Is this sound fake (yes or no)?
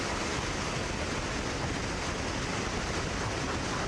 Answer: no